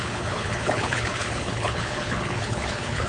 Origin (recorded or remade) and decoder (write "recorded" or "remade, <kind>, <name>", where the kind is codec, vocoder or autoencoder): remade, codec, HILCodec